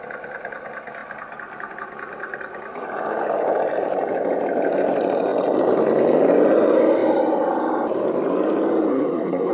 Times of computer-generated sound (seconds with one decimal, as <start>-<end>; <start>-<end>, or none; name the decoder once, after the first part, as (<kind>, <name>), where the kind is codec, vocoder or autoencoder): 8.9-9.5 (codec, SNAC)